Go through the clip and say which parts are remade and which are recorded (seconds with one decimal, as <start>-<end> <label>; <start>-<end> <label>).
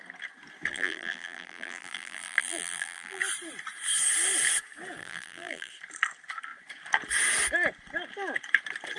0.0-0.7 recorded; 0.7-3.2 remade; 3.2-5.0 recorded; 5.0-5.7 remade; 5.7-9.0 recorded